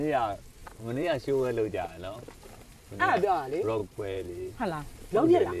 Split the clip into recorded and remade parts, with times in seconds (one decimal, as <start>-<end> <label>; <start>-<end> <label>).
0.0-0.6 recorded; 0.6-3.0 remade; 3.0-3.8 recorded; 3.8-4.6 remade; 4.6-5.6 recorded